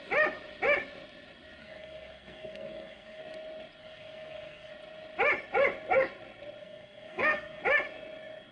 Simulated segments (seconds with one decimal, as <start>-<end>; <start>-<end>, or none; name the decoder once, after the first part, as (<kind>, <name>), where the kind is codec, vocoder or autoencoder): 1.6-3.2 (codec, SNAC); 3.8-4.7; 6.6-7.6